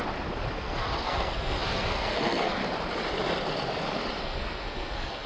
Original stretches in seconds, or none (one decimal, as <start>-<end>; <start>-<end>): 0.0-0.5; 2.6-4.2